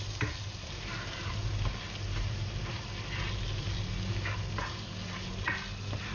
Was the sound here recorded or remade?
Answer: recorded